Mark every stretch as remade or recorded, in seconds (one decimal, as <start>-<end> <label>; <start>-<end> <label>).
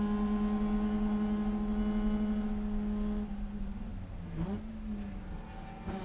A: 0.0-6.0 recorded